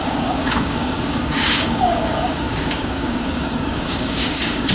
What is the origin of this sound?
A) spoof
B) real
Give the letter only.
A